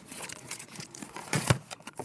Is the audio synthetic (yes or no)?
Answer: yes